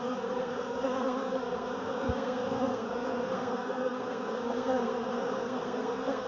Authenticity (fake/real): fake